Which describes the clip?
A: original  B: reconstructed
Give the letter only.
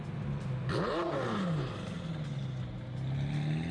A